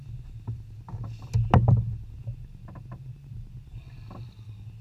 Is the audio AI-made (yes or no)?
no